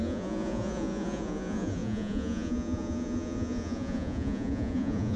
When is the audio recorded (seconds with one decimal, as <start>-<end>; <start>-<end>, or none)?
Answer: none